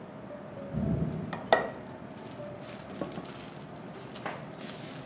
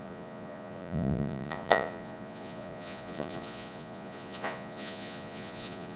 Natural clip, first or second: first